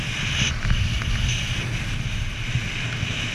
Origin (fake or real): real